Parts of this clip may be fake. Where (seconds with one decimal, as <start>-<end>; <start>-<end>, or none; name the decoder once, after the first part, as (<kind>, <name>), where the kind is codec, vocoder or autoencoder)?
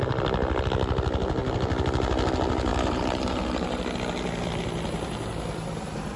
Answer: 2.7-3.8 (vocoder, BigVGAN v2)